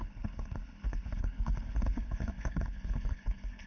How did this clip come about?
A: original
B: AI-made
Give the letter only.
B